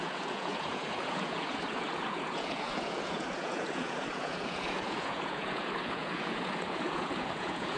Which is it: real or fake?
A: fake